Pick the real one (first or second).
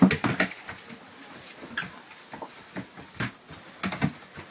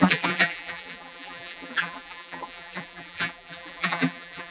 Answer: first